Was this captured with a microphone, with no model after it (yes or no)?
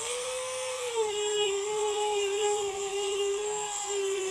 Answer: no